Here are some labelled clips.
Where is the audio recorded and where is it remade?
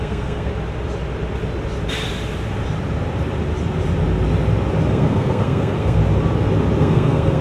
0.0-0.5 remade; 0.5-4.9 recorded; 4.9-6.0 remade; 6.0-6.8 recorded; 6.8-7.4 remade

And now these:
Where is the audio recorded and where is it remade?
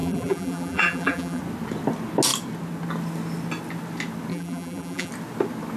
0.0-1.4 remade; 1.4-4.3 recorded; 4.3-5.1 remade; 5.1-5.8 recorded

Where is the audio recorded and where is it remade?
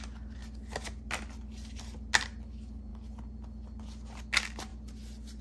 0.0-5.4 recorded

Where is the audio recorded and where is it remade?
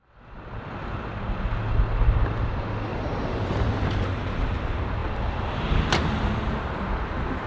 0.0-2.9 recorded; 2.9-4.5 remade; 4.5-7.5 recorded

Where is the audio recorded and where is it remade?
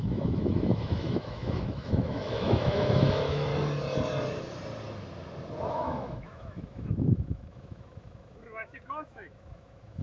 0.0-3.5 remade; 3.5-5.7 recorded; 5.7-10.0 remade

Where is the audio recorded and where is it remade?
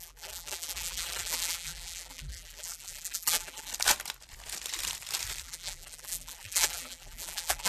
0.0-3.7 remade; 3.7-5.4 recorded; 5.4-7.7 remade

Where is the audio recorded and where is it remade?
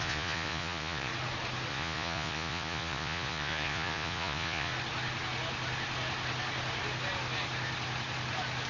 0.0-1.1 remade; 1.1-1.7 recorded; 1.7-4.7 remade; 4.7-8.7 recorded